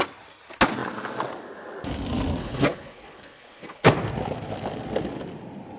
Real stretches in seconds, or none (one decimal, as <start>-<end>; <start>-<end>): 0.0-2.4; 3.9-5.8